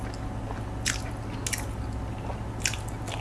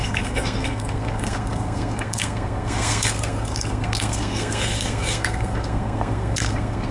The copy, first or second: second